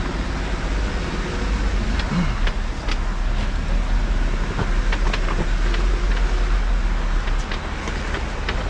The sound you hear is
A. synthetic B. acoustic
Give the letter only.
B